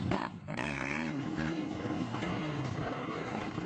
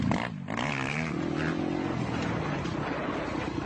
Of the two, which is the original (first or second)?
second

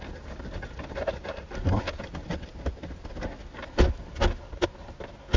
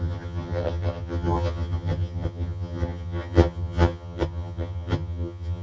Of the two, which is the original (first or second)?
first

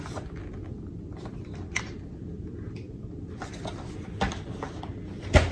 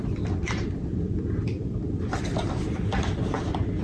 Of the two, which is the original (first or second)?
first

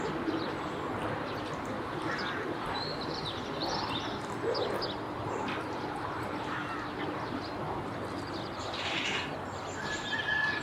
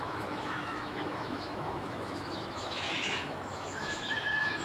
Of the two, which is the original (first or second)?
first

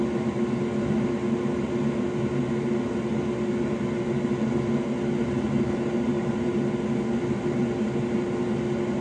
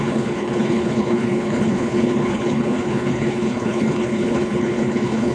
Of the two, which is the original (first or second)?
first